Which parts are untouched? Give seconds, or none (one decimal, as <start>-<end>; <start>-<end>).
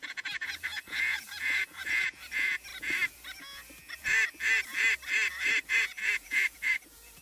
2.7-5.7